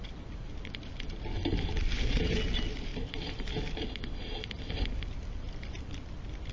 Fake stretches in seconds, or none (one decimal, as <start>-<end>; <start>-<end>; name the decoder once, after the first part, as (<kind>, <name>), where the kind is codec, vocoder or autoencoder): none